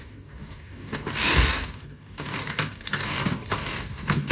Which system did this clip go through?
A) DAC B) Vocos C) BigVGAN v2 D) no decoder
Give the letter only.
A